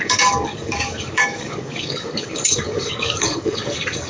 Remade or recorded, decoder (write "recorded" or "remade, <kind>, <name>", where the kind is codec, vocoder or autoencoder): remade, codec, DAC